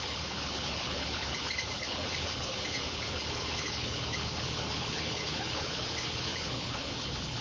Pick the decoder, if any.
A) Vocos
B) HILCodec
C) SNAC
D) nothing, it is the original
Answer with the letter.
B